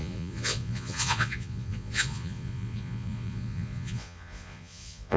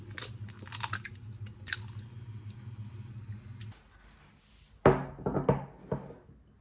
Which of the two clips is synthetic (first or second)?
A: first